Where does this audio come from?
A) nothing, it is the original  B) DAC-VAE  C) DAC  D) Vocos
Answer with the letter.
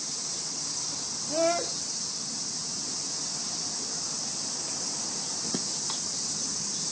A